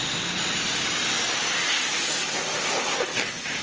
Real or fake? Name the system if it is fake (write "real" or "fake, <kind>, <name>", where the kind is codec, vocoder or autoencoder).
real